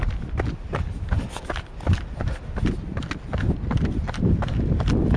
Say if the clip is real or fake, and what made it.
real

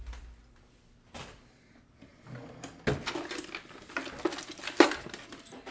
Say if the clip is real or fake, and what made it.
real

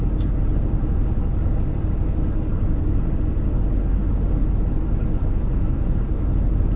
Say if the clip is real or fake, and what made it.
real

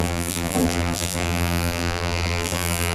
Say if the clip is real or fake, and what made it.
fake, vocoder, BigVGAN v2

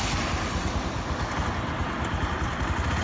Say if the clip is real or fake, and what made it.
real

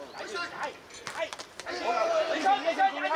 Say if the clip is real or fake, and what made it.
real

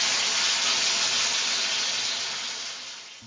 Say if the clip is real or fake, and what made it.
real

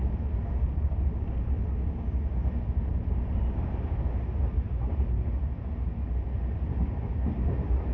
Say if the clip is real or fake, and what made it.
real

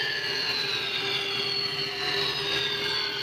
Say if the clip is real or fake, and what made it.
real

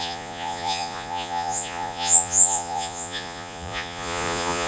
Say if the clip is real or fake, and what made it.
fake, vocoder, Vocos